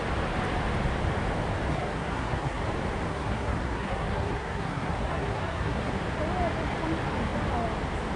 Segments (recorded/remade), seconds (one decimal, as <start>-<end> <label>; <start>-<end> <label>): 0.0-1.7 recorded; 1.7-2.6 remade; 2.6-3.1 recorded; 3.1-5.9 remade; 5.9-8.2 recorded